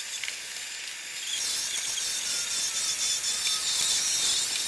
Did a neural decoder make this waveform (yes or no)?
no